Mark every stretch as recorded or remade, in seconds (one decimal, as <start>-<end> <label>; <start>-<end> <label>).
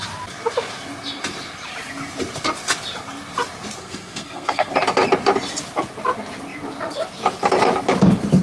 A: 0.0-3.8 recorded; 3.8-4.7 remade; 4.7-8.4 recorded